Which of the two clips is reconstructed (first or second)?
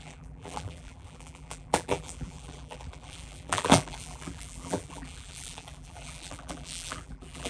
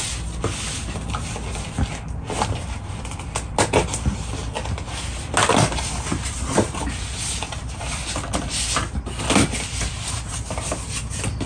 first